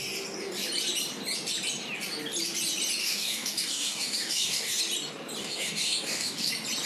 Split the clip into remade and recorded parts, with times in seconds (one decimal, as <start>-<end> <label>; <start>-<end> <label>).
0.0-3.0 recorded; 3.0-4.8 remade; 4.8-5.4 recorded; 5.4-6.5 remade; 6.5-6.9 recorded